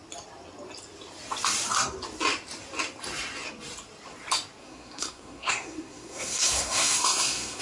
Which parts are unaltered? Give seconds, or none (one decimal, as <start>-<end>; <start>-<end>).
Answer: 0.0-4.6